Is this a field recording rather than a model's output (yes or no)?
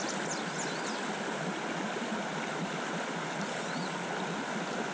yes